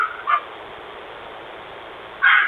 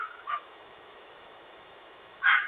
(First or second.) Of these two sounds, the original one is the first